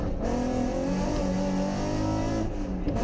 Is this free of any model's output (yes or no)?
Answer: yes